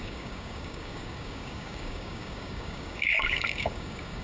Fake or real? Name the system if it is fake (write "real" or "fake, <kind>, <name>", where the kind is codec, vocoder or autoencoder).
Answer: fake, codec, DAC